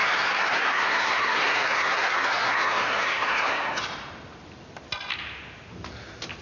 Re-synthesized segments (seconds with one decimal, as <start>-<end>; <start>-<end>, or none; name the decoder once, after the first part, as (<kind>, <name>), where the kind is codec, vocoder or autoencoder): 0.0-3.8 (codec, SNAC)

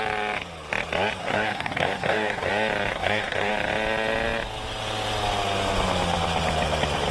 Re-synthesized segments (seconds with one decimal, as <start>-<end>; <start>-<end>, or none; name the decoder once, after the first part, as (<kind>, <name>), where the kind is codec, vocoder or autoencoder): 1.2-2.5 (codec, SNAC); 2.9-3.5